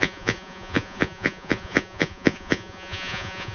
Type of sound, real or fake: fake